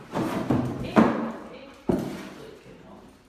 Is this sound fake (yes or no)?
yes